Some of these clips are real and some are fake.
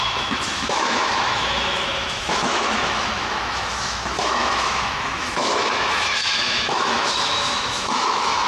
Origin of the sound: fake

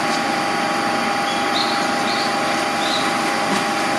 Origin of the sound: real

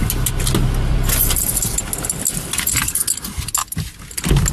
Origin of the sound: real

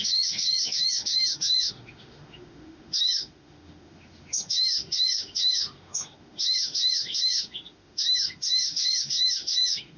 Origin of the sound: fake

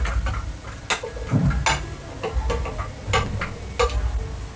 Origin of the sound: real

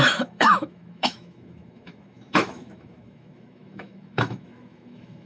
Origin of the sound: fake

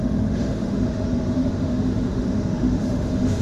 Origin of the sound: fake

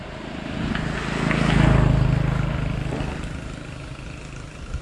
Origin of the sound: real